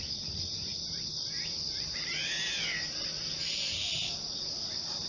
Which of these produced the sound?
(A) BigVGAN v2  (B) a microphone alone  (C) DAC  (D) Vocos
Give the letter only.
B